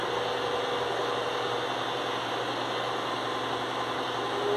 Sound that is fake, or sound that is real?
real